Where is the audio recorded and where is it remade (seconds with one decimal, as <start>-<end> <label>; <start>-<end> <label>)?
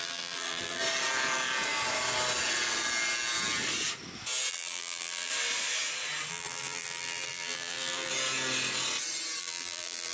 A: 0.0-0.8 remade; 0.8-4.5 recorded; 4.5-5.3 remade; 5.3-6.3 recorded; 6.3-8.1 remade; 8.1-9.4 recorded; 9.4-10.1 remade